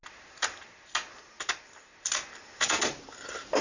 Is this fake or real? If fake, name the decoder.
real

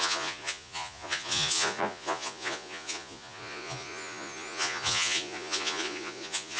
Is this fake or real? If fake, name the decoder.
fake, vocoder, Vocos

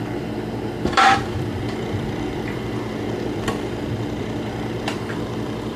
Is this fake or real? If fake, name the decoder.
fake, vocoder, BigVGAN v2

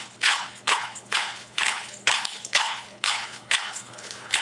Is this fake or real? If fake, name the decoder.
fake, codec, HILCodec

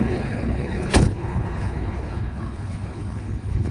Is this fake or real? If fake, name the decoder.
fake, codec, HILCodec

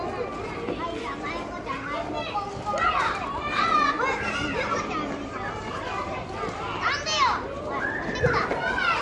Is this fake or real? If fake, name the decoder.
real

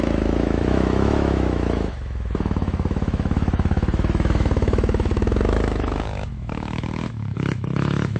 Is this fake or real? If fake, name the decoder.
fake, autoencoder, DAC-VAE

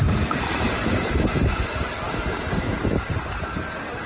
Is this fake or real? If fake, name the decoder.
fake, vocoder, BigVGAN v2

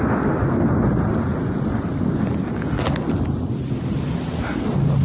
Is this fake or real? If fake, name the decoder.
real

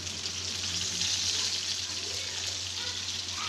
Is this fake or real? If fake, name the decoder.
real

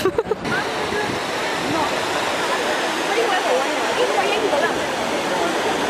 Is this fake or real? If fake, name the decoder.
real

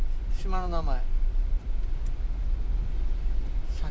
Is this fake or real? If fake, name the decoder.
fake, vocoder, BigVGAN v2